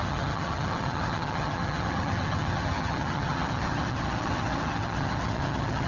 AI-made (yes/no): yes